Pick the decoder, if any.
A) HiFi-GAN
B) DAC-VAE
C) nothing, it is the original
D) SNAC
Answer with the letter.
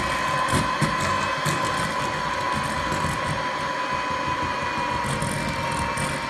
C